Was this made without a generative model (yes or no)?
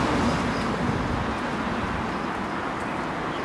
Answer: yes